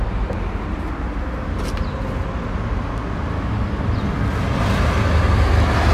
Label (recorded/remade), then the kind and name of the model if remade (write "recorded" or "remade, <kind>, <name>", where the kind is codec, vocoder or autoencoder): recorded